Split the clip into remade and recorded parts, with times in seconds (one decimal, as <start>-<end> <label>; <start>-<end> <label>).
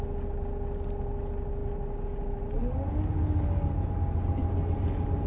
0.0-5.3 recorded